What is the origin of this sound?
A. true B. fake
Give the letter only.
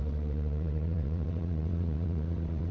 B